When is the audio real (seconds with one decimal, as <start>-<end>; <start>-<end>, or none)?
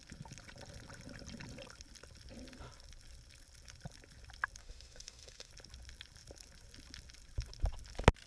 0.0-4.6; 5.5-8.3